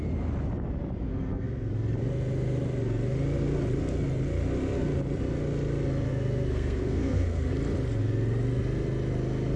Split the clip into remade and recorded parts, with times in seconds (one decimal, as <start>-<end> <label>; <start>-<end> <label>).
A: 0.0-1.1 recorded; 1.1-1.7 remade; 1.7-6.1 recorded; 6.1-7.5 remade; 7.5-9.6 recorded